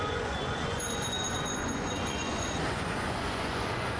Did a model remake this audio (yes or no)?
yes